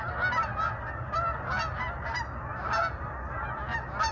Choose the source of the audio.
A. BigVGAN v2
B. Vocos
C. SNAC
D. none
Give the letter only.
D